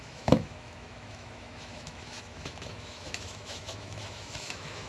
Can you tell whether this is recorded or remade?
remade